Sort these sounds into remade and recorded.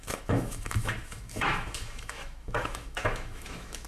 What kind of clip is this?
remade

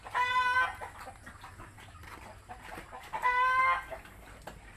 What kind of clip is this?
recorded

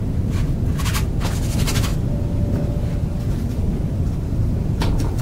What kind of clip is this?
recorded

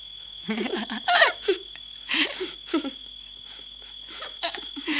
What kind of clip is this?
remade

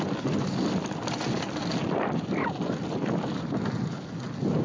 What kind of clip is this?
recorded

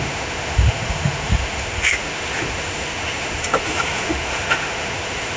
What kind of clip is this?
remade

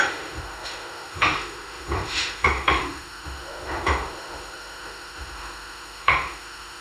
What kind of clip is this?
remade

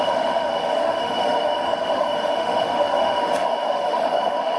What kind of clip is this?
remade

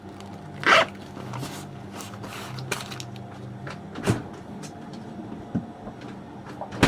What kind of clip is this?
recorded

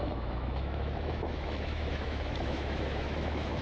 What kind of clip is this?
remade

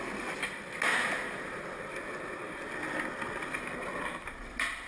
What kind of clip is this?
recorded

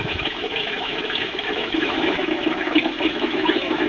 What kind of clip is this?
remade